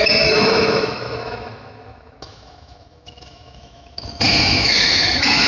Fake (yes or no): yes